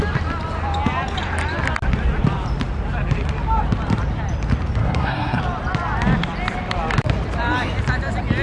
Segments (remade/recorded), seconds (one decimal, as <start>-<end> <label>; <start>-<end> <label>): 0.0-4.8 recorded; 4.8-5.4 remade; 5.4-8.4 recorded